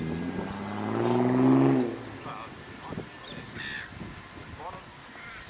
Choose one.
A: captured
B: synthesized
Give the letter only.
A